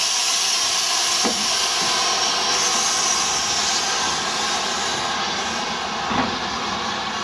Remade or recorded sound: recorded